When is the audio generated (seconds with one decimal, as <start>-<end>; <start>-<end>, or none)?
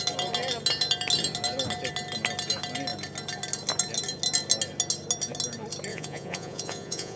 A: 5.9-7.2